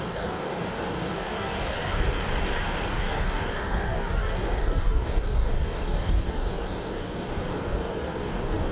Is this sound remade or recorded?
remade